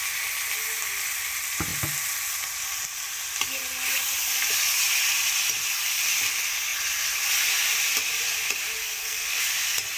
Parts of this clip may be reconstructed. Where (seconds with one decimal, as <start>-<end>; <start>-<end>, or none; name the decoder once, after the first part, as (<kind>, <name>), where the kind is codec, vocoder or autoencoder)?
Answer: 8.8-9.4 (codec, SNAC)

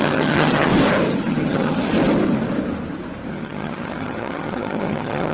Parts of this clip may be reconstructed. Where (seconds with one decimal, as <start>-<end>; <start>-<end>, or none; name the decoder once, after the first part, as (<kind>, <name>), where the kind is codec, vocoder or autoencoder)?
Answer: 0.0-0.7 (vocoder, HiFi-GAN); 1.3-1.8; 3.3-5.3

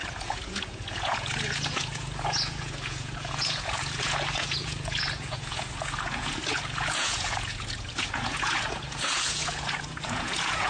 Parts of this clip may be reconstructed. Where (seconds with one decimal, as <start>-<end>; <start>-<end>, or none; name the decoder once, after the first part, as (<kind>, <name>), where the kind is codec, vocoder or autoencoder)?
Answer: 0.0-10.7 (vocoder, Vocos)